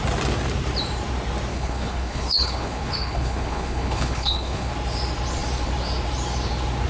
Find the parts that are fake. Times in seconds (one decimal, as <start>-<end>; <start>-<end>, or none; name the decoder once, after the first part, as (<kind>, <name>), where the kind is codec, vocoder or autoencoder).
1.5-4.7 (codec, HILCodec)